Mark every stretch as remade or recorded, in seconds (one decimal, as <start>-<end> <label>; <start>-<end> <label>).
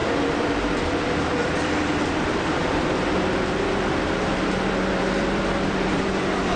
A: 0.0-2.6 remade; 2.6-4.9 recorded; 4.9-6.6 remade